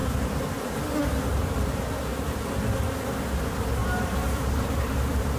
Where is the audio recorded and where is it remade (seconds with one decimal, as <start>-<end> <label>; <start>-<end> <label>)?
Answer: 0.0-3.8 recorded; 3.8-5.4 remade